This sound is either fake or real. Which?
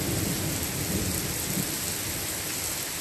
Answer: real